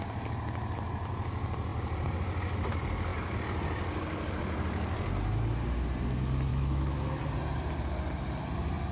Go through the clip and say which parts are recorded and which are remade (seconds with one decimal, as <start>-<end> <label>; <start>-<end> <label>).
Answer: 0.0-6.5 recorded; 6.5-7.2 remade; 7.2-8.9 recorded